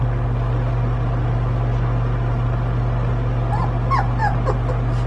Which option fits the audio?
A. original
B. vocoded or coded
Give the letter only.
A